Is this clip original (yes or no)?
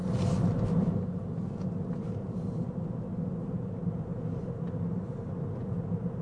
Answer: yes